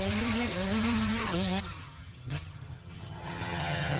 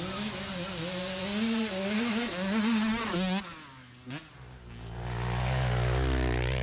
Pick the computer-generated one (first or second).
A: first